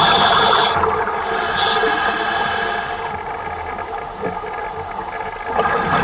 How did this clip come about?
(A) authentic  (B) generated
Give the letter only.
A